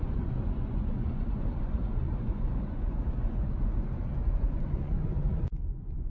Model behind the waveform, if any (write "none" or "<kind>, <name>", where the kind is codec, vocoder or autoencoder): vocoder, Vocos